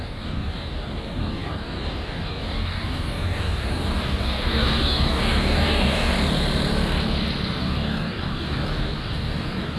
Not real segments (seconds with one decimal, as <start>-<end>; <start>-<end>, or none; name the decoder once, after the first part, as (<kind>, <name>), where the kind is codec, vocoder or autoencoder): 0.0-6.1 (codec, DAC); 7.6-9.8